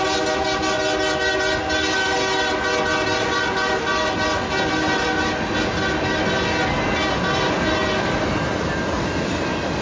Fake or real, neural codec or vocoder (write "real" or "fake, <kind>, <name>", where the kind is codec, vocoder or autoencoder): real